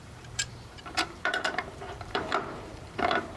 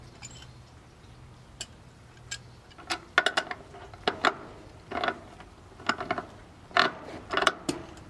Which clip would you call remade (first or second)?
first